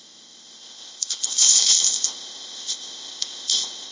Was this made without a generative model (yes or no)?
no